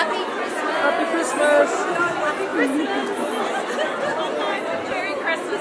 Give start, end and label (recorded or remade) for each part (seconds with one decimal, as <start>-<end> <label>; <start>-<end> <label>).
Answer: 0.0-5.6 recorded